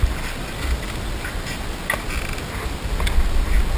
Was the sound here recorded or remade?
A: recorded